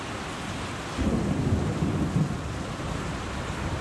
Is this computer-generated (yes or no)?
no